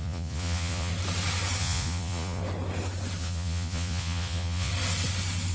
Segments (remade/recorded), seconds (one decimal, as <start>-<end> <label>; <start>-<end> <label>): 0.0-0.9 remade; 0.9-1.6 recorded; 1.6-2.4 remade; 2.4-3.2 recorded; 3.2-4.7 remade; 4.7-5.5 recorded